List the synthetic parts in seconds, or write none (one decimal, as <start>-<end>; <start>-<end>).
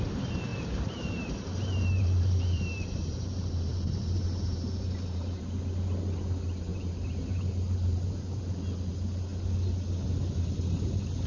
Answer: 0.5-5.6; 6.7-8.4